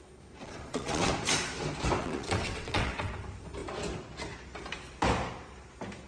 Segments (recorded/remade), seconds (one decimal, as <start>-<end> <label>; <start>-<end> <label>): 0.0-0.4 recorded; 0.4-1.1 remade; 1.1-2.0 recorded; 2.0-3.1 remade; 3.1-6.1 recorded